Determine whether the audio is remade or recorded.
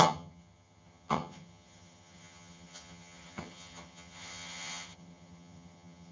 remade